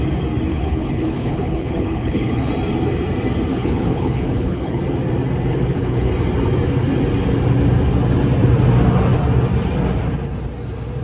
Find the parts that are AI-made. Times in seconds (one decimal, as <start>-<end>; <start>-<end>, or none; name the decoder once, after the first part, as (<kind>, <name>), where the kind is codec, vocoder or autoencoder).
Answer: 0.5-2.5 (codec, HILCodec); 3.5-4.8; 5.5-6.1